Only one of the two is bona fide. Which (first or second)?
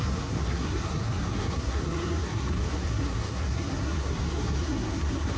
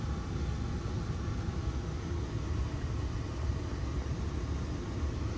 second